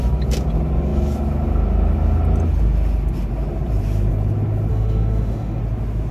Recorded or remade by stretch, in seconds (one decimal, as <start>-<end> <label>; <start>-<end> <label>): 0.0-4.7 recorded; 4.7-5.6 remade; 5.6-6.1 recorded